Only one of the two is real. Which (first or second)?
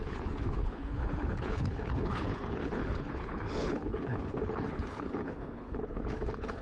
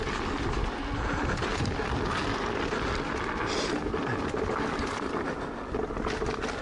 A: second